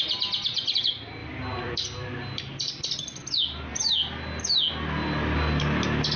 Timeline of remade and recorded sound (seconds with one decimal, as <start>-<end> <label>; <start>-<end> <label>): 0.0-1.2 recorded; 1.2-3.3 remade; 3.3-6.2 recorded